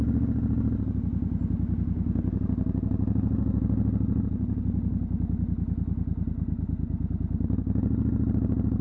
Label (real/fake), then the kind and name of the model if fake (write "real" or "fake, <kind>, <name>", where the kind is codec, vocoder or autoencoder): real